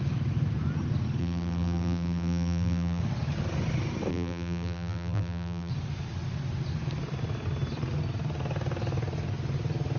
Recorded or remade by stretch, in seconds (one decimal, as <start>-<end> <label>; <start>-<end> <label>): 0.0-1.2 recorded; 1.2-3.0 remade; 3.0-4.1 recorded; 4.1-5.7 remade; 5.7-10.0 recorded